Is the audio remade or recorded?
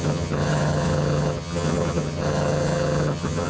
remade